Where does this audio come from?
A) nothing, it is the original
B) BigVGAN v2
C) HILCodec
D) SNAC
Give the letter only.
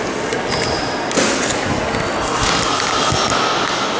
A